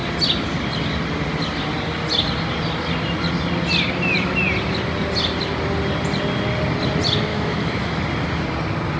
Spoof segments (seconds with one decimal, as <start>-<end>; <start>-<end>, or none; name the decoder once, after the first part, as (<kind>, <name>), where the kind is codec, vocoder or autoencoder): 7.3-8.0 (autoencoder, DAC-VAE)